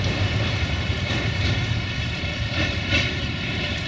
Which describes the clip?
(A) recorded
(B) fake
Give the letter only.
B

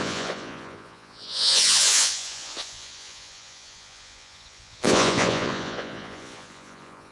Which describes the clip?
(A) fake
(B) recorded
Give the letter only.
A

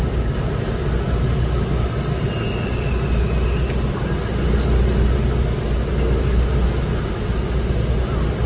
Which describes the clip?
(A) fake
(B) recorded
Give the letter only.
B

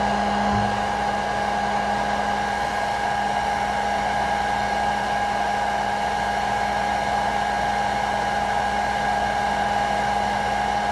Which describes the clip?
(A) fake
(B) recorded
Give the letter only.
B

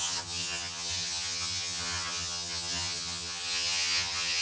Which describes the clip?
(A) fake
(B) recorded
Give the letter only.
A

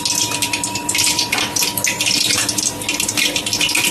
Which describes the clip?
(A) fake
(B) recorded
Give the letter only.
B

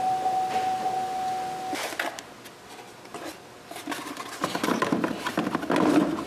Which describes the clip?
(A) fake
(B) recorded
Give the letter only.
B